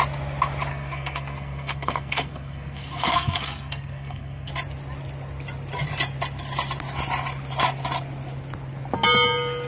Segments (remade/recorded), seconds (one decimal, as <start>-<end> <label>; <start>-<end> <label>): 0.0-0.7 recorded; 0.7-4.5 remade; 4.5-9.7 recorded